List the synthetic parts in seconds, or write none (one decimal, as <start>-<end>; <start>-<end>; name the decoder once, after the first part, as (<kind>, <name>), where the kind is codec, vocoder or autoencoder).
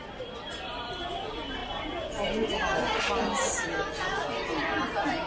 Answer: none